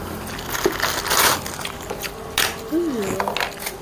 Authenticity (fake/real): real